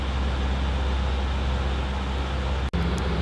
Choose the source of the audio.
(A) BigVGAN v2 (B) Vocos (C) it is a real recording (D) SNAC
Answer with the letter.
C